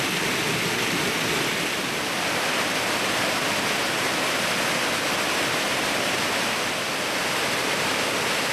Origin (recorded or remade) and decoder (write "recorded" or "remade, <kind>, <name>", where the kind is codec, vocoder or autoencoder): recorded